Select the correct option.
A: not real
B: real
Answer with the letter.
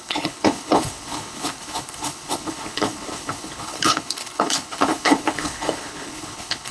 A